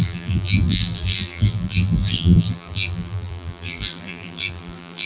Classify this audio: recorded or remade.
remade